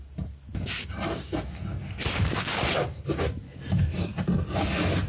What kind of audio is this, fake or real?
real